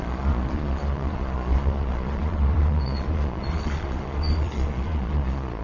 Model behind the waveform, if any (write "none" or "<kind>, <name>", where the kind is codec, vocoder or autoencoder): vocoder, Vocos